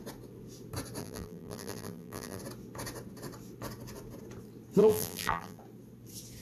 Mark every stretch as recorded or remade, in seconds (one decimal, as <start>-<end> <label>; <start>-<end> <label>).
0.0-1.0 recorded; 1.0-2.4 remade; 2.4-4.8 recorded; 4.8-5.6 remade; 5.6-6.4 recorded